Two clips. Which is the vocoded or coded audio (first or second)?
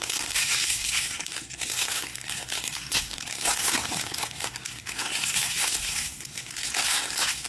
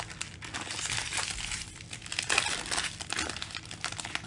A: first